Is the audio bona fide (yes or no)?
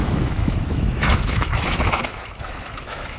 no